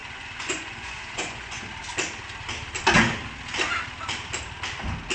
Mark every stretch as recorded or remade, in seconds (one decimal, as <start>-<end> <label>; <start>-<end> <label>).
0.0-1.6 remade; 1.6-5.1 recorded